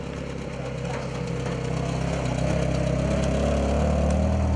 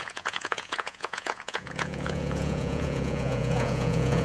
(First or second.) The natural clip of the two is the first